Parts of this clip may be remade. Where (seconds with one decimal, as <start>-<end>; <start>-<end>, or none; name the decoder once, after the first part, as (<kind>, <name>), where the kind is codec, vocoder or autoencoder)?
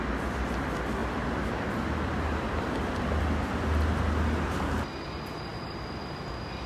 1.0-3.2 (vocoder, BigVGAN v2); 5.5-6.3